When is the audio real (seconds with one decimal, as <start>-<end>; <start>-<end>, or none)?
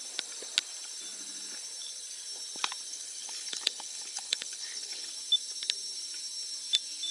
0.0-2.9; 5.1-7.1